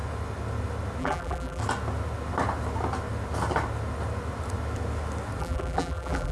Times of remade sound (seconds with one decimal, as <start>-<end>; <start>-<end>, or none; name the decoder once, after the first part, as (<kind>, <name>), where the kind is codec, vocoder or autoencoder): 1.0-1.6 (vocoder, BigVGAN v2); 5.4-6.3